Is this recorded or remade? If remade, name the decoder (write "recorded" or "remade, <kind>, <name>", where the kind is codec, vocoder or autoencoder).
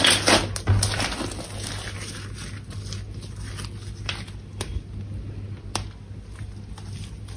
recorded